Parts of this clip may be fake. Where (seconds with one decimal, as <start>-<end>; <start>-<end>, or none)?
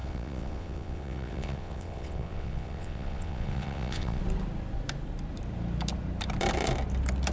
0.0-4.2